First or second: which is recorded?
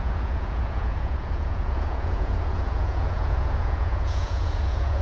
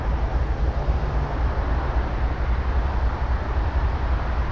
second